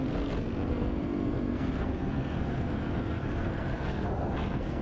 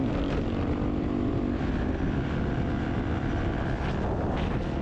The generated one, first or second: first